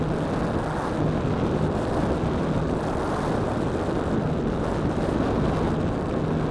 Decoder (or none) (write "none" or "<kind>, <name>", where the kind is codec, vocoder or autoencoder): none